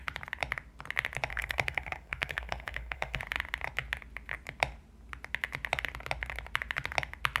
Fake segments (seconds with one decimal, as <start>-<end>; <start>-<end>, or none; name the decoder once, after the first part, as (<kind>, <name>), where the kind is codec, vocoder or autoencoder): 1.3-3.2 (codec, SNAC)